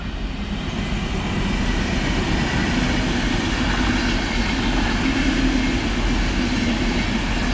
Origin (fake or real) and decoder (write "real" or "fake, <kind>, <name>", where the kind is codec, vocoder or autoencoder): real